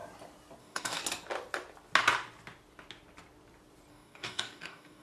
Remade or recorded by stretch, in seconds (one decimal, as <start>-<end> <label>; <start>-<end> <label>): 0.0-0.6 recorded; 0.6-1.0 remade; 1.0-3.9 recorded; 3.9-5.0 remade